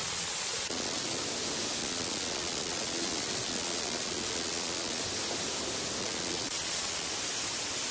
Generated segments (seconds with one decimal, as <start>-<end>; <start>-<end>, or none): 0.0-1.2; 1.8-5.0; 6.0-7.1